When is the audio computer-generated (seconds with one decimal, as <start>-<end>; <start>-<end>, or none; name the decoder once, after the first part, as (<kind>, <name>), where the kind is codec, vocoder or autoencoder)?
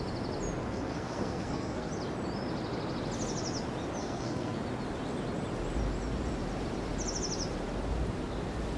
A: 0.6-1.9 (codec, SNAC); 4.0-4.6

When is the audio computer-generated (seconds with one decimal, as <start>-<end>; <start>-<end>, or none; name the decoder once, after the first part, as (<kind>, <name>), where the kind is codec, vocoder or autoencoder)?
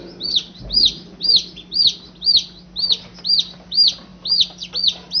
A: none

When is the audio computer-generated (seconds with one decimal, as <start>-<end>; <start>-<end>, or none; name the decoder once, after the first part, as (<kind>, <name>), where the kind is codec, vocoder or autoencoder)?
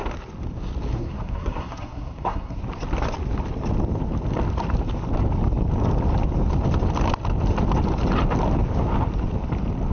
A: 0.9-2.6 (codec, SNAC)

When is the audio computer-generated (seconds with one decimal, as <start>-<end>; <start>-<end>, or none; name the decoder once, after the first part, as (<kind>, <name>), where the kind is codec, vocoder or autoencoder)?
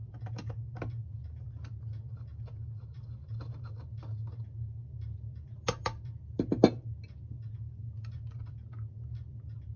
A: none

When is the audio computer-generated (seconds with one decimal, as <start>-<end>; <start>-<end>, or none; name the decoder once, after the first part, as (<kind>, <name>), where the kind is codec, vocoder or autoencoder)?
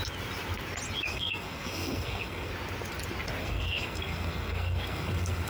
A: 1.1-2.5 (codec, SNAC); 3.4-5.5